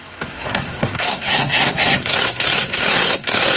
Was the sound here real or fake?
fake